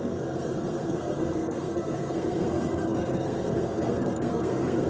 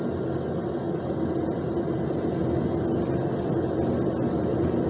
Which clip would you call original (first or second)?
second